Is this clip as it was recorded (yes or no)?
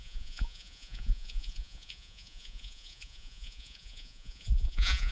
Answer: no